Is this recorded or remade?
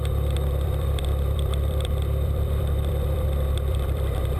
remade